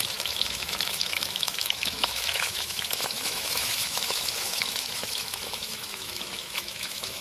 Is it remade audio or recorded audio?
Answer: remade